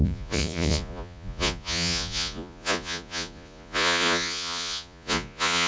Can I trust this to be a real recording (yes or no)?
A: no